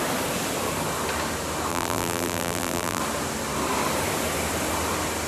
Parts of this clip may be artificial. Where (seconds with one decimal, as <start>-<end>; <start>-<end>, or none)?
1.7-3.0